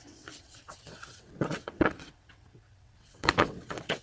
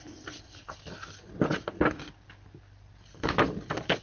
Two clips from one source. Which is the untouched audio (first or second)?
second